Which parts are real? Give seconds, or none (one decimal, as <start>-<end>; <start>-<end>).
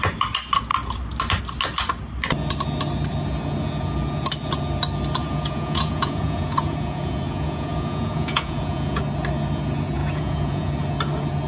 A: 0.0-5.2; 9.0-10.0; 10.7-11.5